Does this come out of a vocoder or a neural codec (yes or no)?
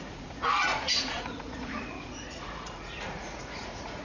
yes